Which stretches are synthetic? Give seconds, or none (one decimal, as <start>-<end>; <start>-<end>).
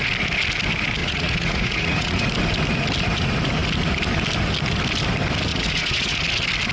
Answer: 1.0-2.2; 5.5-6.2